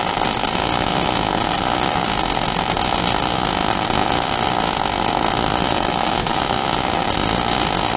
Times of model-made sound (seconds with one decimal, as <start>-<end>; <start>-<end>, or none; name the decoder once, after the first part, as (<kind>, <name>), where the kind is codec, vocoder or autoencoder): none